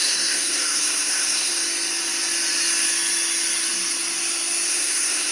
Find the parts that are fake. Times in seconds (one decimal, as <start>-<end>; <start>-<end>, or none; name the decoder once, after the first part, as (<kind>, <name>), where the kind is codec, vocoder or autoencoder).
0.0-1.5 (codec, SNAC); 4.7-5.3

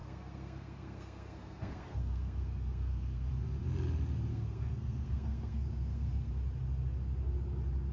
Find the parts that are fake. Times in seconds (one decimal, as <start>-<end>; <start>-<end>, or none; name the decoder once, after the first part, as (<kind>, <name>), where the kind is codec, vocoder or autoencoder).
0.0-3.3 (codec, SNAC); 4.3-6.3

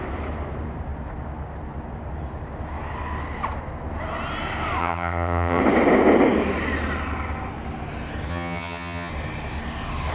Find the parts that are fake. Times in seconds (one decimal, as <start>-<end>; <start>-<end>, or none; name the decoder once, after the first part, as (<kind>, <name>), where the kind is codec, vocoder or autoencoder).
4.8-5.6 (vocoder, HiFi-GAN); 8.3-9.1

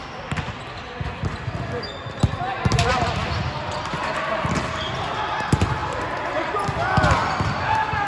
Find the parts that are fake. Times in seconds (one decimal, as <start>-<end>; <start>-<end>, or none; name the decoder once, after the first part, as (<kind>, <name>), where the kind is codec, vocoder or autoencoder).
none

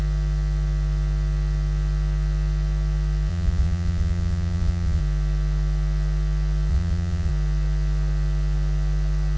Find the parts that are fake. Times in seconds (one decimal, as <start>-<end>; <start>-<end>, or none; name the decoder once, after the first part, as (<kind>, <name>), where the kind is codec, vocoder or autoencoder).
3.3-5.0 (vocoder, Vocos); 6.7-7.3

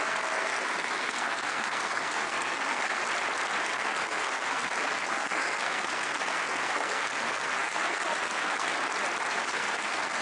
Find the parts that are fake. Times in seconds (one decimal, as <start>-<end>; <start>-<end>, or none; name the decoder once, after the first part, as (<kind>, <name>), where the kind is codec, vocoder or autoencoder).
0.0-3.0 (codec, SNAC); 3.6-8.7; 9.3-10.2

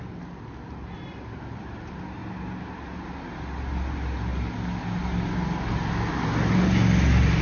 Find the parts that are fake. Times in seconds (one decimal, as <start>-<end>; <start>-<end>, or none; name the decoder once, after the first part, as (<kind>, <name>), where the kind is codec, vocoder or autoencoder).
none